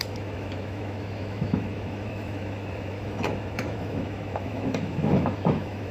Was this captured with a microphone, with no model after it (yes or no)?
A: no